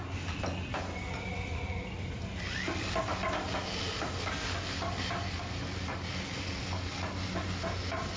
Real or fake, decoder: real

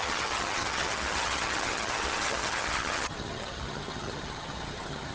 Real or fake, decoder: fake, vocoder, HiFi-GAN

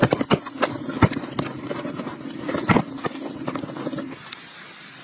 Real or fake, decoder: fake, vocoder, BigVGAN v2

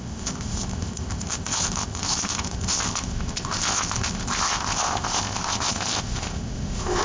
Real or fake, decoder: fake, codec, ZipCodec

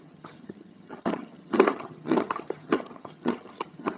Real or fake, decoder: fake, vocoder, HiFi-GAN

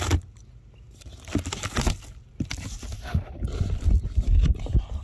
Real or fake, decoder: real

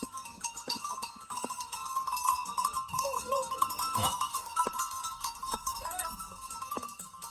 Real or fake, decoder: fake, codec, SNAC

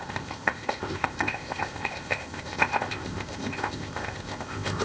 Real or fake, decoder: fake, codec, ZipCodec